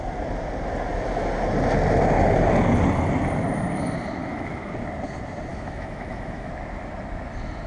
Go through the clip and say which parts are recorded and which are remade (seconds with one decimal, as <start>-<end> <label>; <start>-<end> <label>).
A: 0.0-4.2 recorded; 4.2-4.7 remade; 4.7-5.5 recorded; 5.5-6.5 remade; 6.5-7.7 recorded